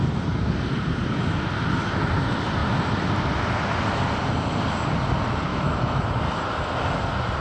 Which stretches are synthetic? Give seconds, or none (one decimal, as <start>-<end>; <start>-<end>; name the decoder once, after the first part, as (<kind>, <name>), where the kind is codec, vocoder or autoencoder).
5.5-6.0 (autoencoder, DAC-VAE)